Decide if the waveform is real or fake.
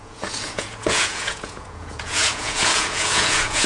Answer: fake